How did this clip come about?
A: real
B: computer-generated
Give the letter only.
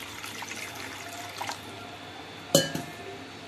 A